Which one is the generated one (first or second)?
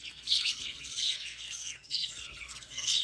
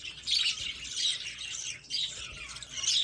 first